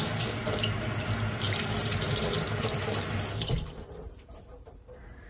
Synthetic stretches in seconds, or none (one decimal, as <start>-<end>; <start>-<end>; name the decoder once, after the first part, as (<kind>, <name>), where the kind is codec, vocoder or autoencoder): 1.8-5.3 (vocoder, BigVGAN v2)